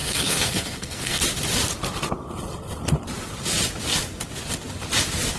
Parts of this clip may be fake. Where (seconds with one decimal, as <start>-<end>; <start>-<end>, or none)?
0.0-1.2

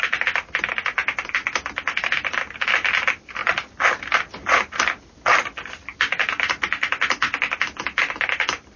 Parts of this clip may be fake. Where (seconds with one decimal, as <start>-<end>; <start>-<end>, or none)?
none

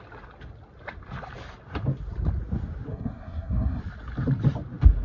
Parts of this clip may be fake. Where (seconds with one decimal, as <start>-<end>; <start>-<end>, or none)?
2.9-3.8

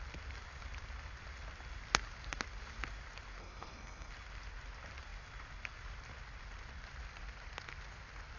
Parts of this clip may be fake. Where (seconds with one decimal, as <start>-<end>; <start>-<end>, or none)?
3.4-4.1

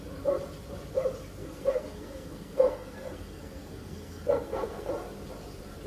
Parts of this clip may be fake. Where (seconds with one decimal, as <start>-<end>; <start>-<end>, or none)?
1.4-4.9

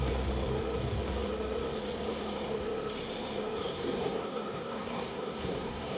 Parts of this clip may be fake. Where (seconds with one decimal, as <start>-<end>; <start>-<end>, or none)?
3.6-6.0

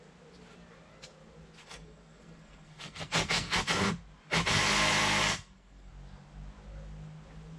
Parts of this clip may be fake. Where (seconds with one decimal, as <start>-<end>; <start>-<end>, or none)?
1.6-3.8; 5.0-5.9

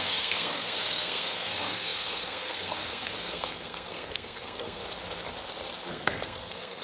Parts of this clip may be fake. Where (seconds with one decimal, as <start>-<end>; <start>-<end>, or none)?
0.0-4.8; 5.9-6.8